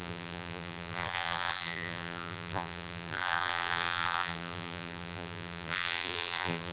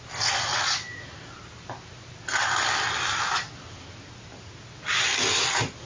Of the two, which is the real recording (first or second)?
second